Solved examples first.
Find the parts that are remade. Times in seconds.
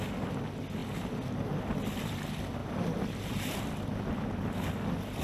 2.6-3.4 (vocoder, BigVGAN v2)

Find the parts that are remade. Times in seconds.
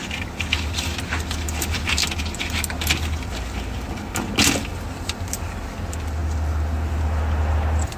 none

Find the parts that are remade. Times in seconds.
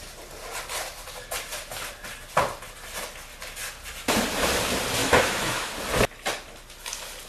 5.0-5.7 (autoencoder, DAC-VAE)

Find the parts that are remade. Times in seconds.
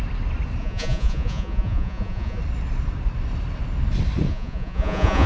0.6-2.4 (vocoder, Vocos); 4.3-5.3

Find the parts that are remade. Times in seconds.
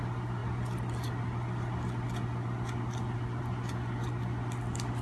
none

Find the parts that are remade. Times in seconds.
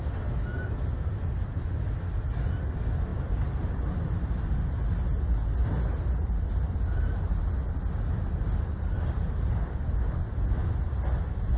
3.1-4.2 (vocoder, BigVGAN v2)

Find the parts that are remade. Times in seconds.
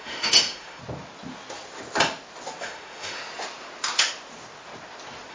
0.0-0.8 (autoencoder, DAC-VAE); 2.6-3.2